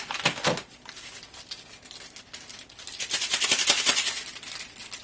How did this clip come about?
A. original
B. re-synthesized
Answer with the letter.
A